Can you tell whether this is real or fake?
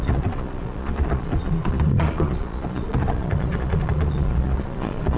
fake